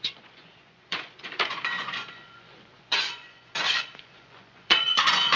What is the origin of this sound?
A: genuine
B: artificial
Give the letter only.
B